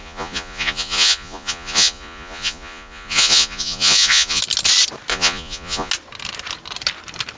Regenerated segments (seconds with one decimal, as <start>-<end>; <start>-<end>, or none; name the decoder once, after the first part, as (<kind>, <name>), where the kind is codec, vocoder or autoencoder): 0.0-4.4 (vocoder, Vocos); 5.1-5.9